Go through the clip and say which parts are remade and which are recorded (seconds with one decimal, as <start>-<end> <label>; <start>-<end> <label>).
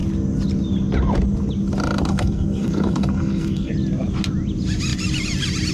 0.0-2.1 recorded; 2.1-3.7 remade; 3.7-5.7 recorded